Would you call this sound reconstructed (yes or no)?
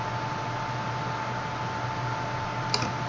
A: no